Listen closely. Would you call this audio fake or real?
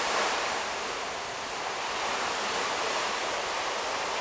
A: fake